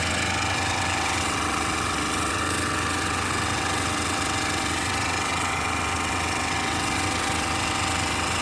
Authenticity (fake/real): fake